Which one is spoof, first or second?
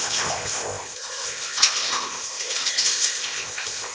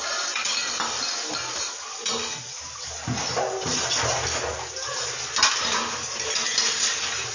first